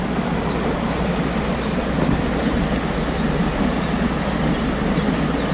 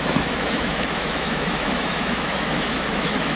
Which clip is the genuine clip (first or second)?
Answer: first